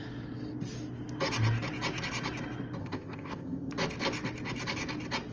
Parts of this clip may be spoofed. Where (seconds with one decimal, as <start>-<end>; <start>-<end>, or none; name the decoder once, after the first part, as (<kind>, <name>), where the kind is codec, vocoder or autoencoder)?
2.8-3.7 (codec, ZipCodec)